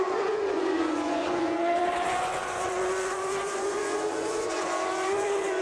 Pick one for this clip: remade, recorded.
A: remade